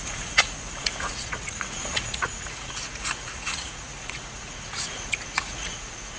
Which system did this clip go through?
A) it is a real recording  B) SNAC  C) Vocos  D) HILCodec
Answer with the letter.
C